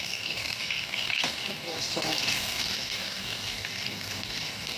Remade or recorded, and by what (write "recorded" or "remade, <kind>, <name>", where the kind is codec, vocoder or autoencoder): remade, codec, DAC